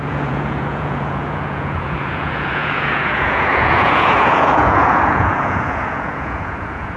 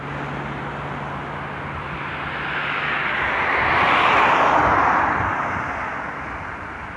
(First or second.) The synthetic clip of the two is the first